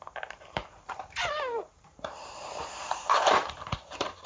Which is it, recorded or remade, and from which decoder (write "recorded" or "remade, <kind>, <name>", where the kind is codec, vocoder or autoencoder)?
remade, vocoder, BigVGAN v2